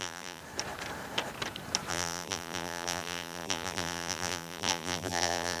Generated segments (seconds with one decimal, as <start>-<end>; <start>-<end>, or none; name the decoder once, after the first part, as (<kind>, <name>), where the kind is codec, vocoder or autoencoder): 0.0-0.4 (vocoder, BigVGAN v2); 1.9-5.6